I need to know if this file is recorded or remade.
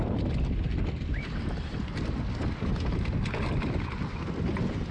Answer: recorded